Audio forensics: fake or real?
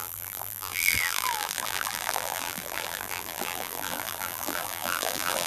fake